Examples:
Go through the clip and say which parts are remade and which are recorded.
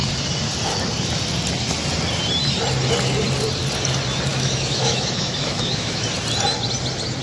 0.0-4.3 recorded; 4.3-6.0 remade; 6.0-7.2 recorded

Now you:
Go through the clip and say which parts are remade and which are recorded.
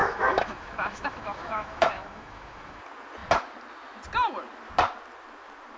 0.0-2.8 remade; 2.8-5.8 recorded